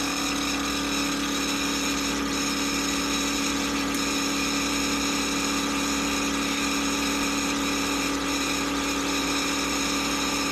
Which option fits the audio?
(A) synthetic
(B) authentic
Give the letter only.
B